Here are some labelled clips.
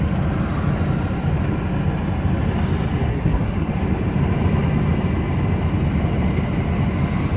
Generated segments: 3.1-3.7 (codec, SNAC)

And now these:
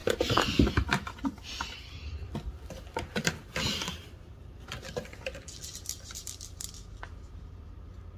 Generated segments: 0.6-8.2 (vocoder, BigVGAN v2)